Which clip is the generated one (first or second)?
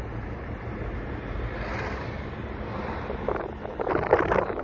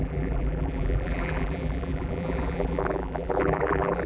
second